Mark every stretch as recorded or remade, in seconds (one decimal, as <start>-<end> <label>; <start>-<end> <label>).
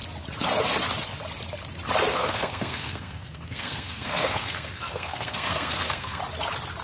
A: 0.0-2.1 recorded; 2.1-6.2 remade; 6.2-6.8 recorded